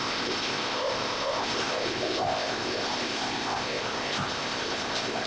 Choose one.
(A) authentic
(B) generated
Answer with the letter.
B